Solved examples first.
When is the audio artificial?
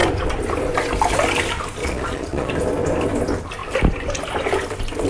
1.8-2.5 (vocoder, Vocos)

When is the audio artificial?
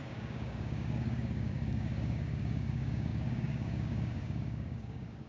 0.0-5.3 (codec, DAC)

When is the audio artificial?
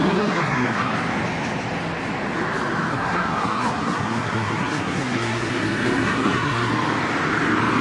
0.0-0.9 (codec, SNAC); 2.9-6.7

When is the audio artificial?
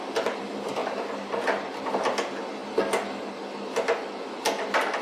none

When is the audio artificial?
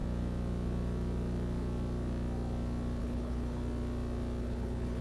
3.0-3.6 (codec, HILCodec); 4.4-5.0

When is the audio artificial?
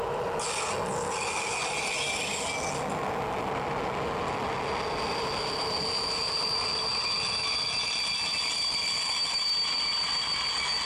none